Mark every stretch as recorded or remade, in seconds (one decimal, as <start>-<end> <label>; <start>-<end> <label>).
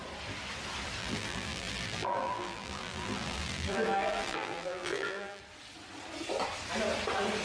0.0-1.0 recorded; 1.0-5.4 remade; 5.4-7.4 recorded